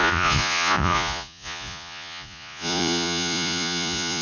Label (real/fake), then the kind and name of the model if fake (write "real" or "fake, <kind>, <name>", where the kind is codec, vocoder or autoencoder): fake, vocoder, Vocos